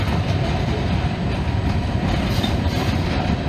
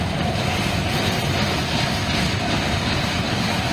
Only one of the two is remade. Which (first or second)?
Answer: first